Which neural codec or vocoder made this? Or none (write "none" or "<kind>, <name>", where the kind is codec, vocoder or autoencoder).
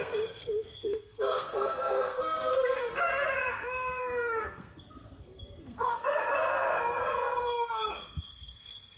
codec, SNAC